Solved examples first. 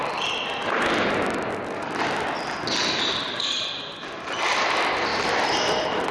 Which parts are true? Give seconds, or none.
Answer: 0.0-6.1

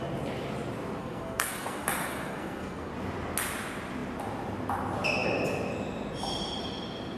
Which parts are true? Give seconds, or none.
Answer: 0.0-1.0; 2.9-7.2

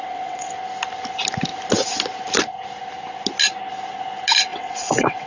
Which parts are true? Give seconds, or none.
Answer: 0.5-4.5

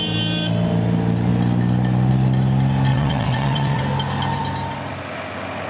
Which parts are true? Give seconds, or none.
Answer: 0.0-2.9; 3.8-5.7

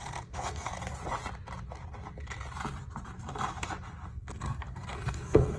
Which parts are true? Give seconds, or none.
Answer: 0.7-4.1